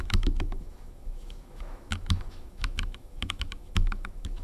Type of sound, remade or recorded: remade